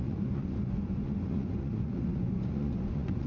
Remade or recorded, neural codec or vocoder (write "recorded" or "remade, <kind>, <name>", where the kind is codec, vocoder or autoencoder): remade, vocoder, Vocos